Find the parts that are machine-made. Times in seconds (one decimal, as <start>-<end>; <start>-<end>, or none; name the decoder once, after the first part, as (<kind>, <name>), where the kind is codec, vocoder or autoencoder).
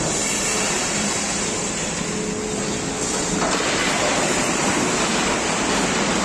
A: 4.0-4.6 (vocoder, BigVGAN v2)